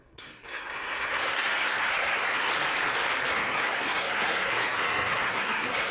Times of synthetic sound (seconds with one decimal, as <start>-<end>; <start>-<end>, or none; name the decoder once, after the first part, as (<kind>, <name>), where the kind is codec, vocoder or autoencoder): 0.0-2.5 (codec, SNAC); 3.3-5.9